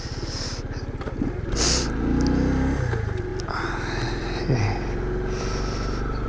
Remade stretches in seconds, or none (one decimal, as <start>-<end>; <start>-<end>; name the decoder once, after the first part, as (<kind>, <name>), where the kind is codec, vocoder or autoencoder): none